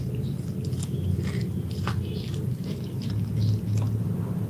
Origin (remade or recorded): recorded